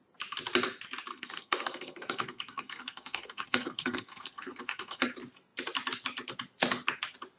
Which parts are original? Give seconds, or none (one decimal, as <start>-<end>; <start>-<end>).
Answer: 0.0-1.1; 5.0-7.4